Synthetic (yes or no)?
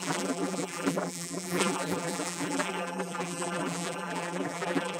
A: yes